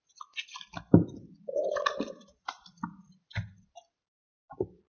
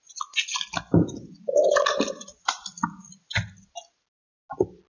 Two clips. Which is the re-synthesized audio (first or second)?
first